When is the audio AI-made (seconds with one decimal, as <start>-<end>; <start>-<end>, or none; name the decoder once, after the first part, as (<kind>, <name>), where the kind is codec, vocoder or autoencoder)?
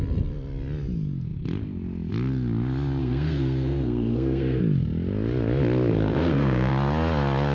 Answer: 3.0-4.6 (codec, SNAC); 5.9-6.7